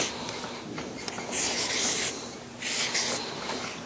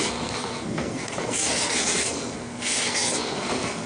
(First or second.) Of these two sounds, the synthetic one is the second